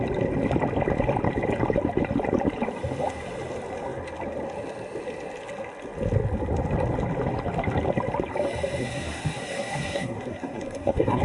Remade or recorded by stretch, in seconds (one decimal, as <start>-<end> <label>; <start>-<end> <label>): 0.0-8.8 recorded; 8.8-11.2 remade